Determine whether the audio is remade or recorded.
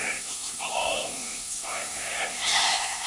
remade